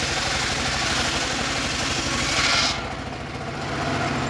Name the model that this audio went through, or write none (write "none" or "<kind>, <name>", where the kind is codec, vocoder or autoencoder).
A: none